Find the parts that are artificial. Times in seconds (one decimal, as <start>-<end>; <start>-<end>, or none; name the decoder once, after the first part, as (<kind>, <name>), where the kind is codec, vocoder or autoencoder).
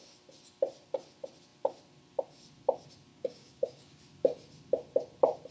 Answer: 3.1-4.0 (codec, DAC)